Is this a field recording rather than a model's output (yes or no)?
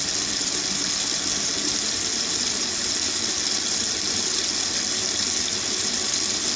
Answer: yes